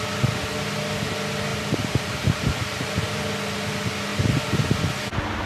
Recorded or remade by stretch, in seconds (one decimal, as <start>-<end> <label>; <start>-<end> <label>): 0.0-1.5 recorded; 1.5-3.3 remade; 3.3-4.1 recorded; 4.1-4.6 remade; 4.6-5.5 recorded